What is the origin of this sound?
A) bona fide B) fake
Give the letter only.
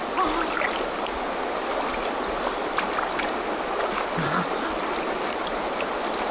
A